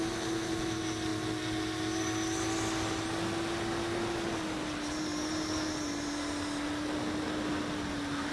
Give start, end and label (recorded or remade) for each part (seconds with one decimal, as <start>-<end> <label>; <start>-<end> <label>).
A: 0.0-8.3 recorded